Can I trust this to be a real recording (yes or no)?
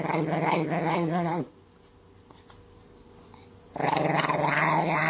yes